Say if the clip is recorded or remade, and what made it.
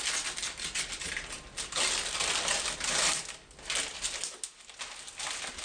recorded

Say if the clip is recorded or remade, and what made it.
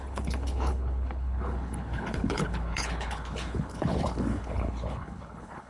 remade, codec, HILCodec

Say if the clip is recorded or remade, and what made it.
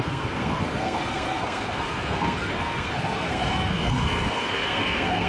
remade, codec, SNAC